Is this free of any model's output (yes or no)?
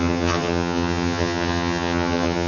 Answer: no